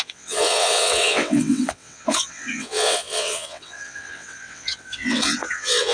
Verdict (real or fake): fake